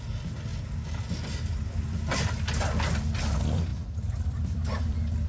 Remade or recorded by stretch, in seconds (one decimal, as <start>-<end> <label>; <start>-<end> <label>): 0.0-0.5 recorded; 0.5-2.1 remade; 2.1-3.7 recorded; 3.7-5.3 remade